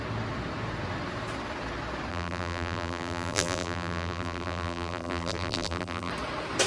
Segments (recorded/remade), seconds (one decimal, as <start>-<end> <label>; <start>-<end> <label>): 0.0-2.1 recorded; 2.1-6.1 remade; 6.1-6.7 recorded